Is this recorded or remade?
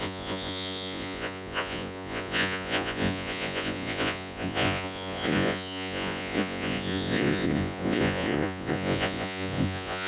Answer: remade